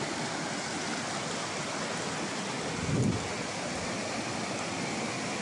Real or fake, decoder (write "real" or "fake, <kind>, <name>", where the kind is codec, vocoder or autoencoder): real